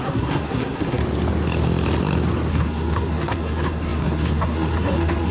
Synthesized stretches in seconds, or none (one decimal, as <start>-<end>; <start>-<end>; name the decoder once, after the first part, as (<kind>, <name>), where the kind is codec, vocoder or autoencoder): 0.0-1.0 (codec, SNAC); 2.5-5.3